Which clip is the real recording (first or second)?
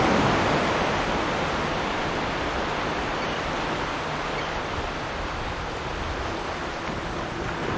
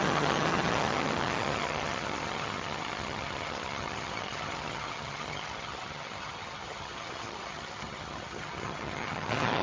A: first